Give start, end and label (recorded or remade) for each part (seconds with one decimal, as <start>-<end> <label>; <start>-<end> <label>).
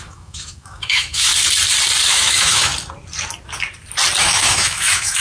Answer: 0.0-1.3 remade; 1.3-2.0 recorded; 2.0-2.7 remade; 2.7-4.2 recorded; 4.2-5.2 remade